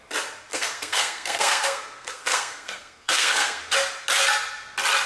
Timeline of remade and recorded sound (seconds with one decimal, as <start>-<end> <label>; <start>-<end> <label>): 0.0-0.5 recorded; 0.5-3.6 remade; 3.6-5.1 recorded